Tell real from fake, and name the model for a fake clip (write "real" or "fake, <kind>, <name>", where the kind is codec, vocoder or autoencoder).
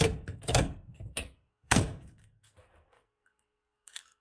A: fake, codec, SNAC